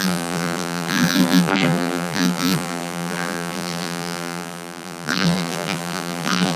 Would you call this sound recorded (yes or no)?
no